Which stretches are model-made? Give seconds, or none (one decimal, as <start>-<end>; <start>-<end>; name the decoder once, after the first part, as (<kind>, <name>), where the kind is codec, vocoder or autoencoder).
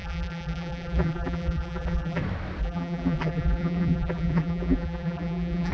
0.0-2.2 (vocoder, BigVGAN v2); 2.6-5.7